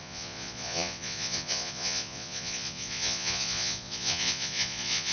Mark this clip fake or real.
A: fake